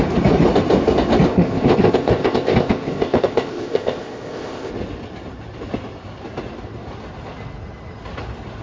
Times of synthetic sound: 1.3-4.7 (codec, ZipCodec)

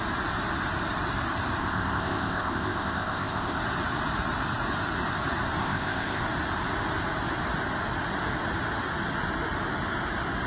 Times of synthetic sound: 1.6-3.6 (codec, ZipCodec); 5.6-6.2

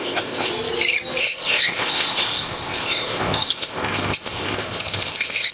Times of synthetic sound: 0.0-0.5 (codec, ZipCodec); 1.2-5.5

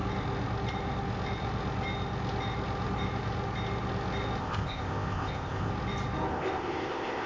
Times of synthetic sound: 4.4-5.7 (codec, ZipCodec); 6.3-7.3

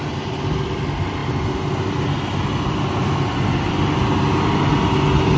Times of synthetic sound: none

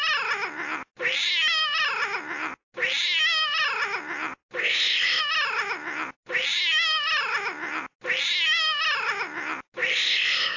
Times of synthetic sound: 4.6-5.2 (codec, ZipCodec); 9.9-10.6

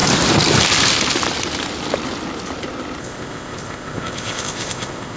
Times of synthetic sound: 3.0-5.2 (codec, ZipCodec)